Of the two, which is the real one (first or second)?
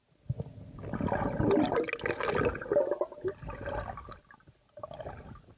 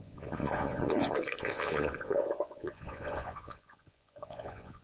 first